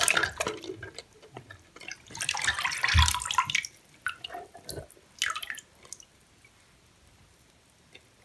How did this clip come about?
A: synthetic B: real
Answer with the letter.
B